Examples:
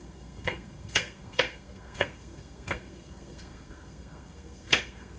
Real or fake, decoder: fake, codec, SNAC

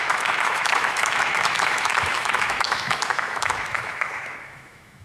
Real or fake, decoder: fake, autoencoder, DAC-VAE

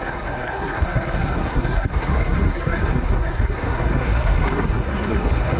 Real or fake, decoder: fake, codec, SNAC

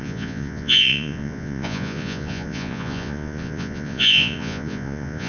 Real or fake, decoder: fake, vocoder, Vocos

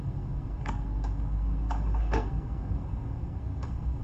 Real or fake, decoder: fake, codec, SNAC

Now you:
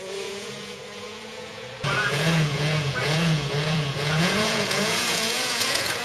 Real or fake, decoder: fake, vocoder, Vocos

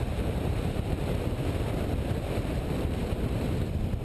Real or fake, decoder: fake, vocoder, BigVGAN v2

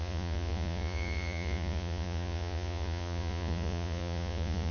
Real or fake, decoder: fake, vocoder, Vocos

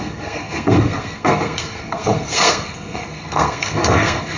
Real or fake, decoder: fake, codec, SNAC